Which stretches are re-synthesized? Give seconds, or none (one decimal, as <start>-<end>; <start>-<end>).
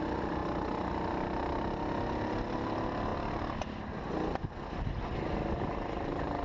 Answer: none